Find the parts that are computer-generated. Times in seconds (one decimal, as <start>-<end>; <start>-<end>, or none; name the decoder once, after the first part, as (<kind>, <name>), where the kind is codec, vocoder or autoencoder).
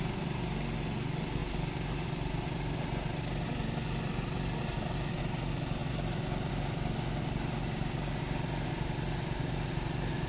none